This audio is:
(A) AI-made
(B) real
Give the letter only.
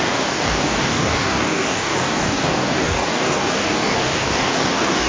A